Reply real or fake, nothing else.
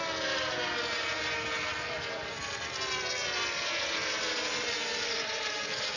real